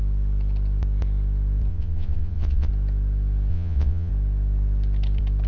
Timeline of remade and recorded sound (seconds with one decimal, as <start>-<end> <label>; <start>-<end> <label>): 0.0-1.7 recorded; 1.7-2.7 remade; 2.7-3.5 recorded; 3.5-4.1 remade; 4.1-5.5 recorded